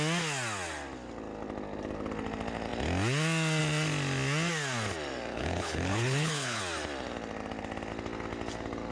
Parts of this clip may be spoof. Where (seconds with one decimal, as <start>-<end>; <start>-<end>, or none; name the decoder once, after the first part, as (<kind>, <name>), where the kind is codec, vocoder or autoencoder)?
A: 5.3-6.6 (codec, HILCodec)